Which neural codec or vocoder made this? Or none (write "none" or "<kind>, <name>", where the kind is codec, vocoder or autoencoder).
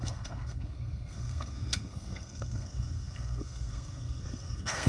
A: codec, SNAC